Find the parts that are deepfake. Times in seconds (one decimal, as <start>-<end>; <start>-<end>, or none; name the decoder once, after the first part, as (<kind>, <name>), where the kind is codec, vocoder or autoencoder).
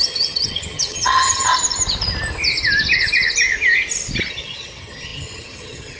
0.0-1.5 (vocoder, HiFi-GAN); 4.3-6.0